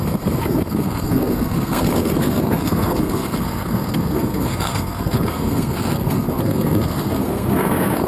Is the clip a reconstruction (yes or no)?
yes